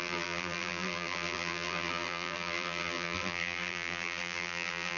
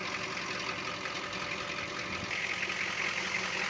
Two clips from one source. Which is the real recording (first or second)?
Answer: second